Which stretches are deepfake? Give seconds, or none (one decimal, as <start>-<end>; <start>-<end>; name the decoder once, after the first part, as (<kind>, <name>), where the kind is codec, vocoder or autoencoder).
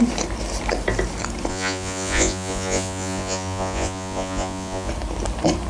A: 1.5-4.9 (vocoder, Vocos)